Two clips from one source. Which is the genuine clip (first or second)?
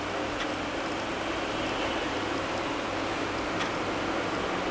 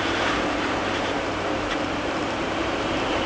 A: first